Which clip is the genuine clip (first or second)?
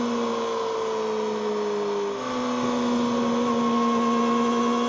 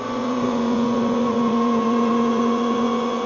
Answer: first